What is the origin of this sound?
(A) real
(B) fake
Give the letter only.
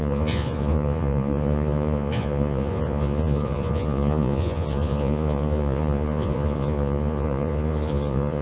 B